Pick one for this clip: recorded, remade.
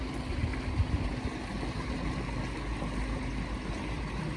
recorded